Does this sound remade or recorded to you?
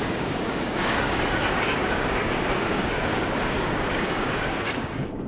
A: remade